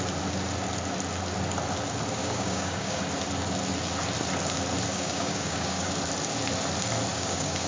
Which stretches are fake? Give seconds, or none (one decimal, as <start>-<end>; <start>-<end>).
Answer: 2.2-3.0; 4.9-5.9; 7.1-7.7

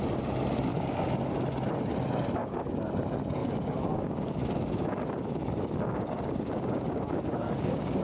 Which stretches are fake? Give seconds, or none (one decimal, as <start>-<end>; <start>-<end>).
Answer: 0.7-1.3; 2.4-2.9; 3.4-8.0

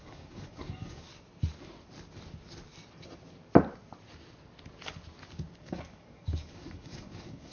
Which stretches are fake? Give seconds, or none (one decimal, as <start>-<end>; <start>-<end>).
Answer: 0.0-1.1; 5.6-7.5

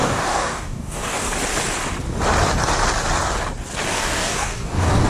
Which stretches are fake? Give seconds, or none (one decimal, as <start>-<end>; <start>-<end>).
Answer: 0.0-1.3; 3.9-5.1

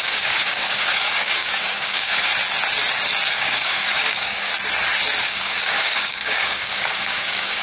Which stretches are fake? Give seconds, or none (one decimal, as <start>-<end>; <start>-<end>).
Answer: 0.0-2.3; 3.3-4.5; 5.2-7.6

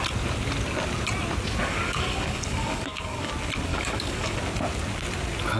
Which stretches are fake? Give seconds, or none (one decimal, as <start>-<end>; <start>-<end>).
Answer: 1.6-3.3; 3.7-4.4